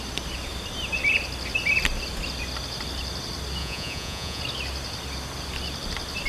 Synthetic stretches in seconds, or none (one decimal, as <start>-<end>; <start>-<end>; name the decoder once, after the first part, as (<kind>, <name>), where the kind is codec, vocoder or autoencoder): 3.6-4.4 (vocoder, Vocos)